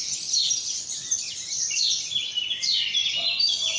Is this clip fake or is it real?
real